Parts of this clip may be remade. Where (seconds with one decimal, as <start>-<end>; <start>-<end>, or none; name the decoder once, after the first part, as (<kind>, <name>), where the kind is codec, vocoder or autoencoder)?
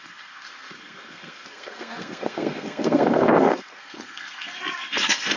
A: 0.0-5.4 (codec, SNAC)